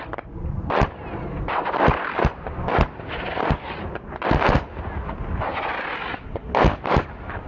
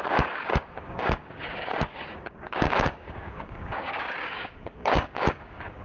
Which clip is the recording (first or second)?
first